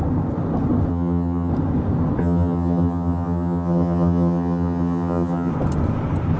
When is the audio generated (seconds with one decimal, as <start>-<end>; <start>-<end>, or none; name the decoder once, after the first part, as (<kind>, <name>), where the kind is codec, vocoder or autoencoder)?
0.9-1.5 (vocoder, HiFi-GAN); 2.2-5.5